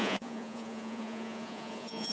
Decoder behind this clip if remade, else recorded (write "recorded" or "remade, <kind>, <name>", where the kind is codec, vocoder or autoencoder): remade, vocoder, Vocos